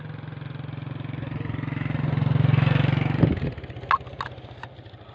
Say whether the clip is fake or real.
real